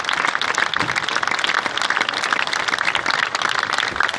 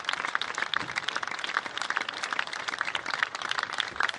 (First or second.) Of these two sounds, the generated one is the second